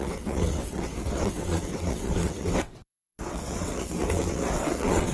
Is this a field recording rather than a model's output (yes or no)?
no